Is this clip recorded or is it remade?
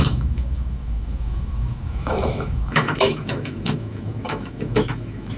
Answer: remade